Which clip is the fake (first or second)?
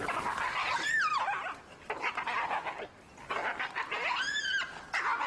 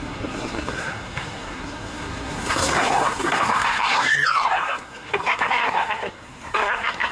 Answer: second